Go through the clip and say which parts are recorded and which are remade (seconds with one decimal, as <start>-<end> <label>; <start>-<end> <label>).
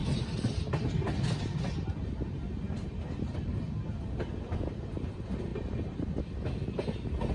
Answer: 0.0-7.3 recorded